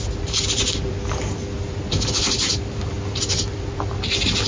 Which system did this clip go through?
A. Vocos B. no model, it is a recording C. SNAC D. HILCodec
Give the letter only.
B